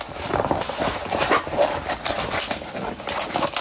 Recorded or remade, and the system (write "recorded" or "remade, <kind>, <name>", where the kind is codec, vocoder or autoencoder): recorded